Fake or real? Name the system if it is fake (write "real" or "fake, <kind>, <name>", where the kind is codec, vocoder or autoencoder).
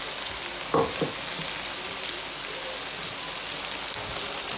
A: real